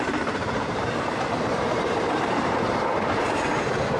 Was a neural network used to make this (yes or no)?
yes